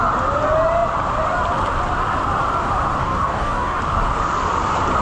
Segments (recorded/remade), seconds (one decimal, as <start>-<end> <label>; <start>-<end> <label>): 0.0-3.0 recorded; 3.0-3.8 remade; 3.8-5.0 recorded